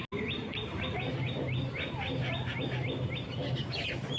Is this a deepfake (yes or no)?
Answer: no